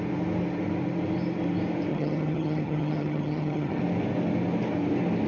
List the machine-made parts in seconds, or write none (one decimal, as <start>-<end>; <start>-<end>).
1.9-3.8